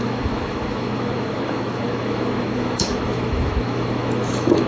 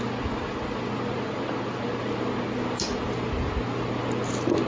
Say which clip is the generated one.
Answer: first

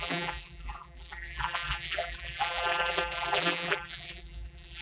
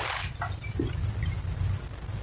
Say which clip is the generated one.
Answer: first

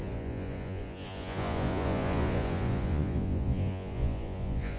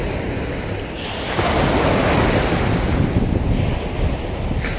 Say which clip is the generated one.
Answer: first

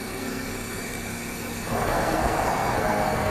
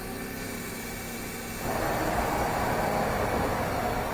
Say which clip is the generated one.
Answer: first